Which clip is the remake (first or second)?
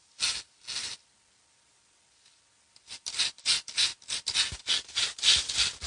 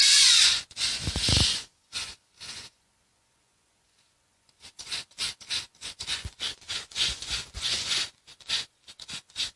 second